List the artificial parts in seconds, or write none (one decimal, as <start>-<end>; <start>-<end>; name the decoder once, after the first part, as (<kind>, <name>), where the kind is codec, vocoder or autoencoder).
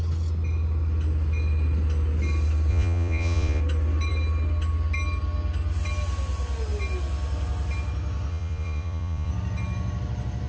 2.7-3.6 (vocoder, Vocos); 8.3-9.3